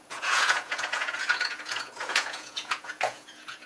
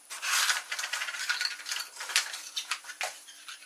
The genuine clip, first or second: second